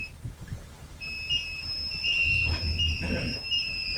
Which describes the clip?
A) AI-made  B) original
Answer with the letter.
A